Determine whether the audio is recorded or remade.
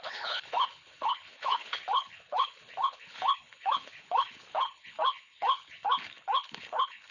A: remade